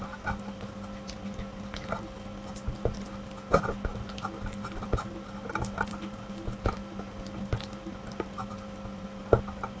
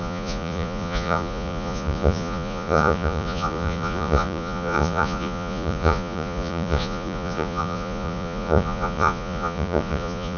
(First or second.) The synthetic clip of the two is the second